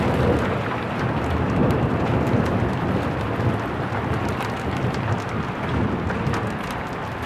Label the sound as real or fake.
real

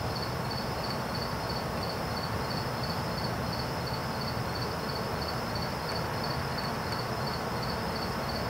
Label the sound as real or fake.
real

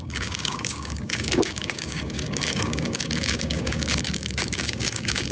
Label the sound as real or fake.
fake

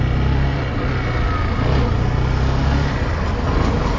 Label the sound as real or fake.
real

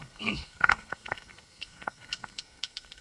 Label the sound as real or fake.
fake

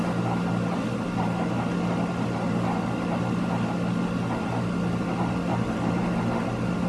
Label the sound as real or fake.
real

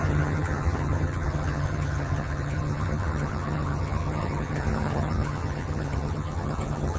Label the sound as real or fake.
fake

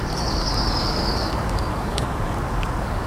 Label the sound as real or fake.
fake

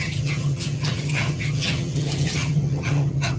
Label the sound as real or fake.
fake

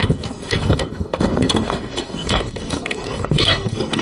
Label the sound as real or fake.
fake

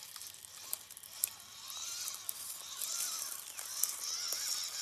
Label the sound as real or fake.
real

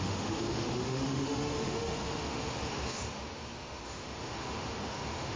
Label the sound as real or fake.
fake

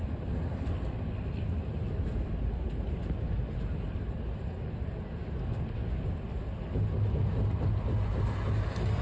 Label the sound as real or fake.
real